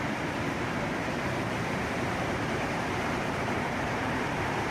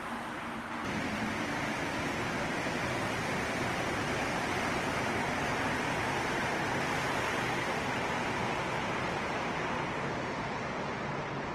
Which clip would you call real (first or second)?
second